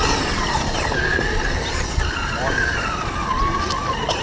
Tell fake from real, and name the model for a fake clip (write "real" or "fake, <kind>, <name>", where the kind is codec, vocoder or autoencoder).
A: fake, vocoder, BigVGAN v2